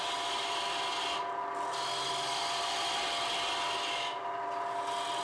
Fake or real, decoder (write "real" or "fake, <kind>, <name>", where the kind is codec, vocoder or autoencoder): real